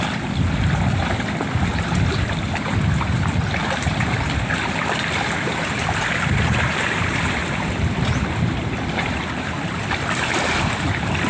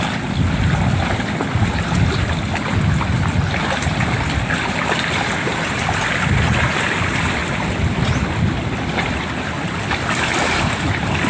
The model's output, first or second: first